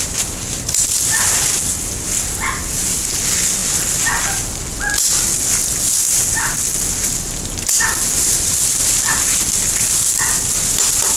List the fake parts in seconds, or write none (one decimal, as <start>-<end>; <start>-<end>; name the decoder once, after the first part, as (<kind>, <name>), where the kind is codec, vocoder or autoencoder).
none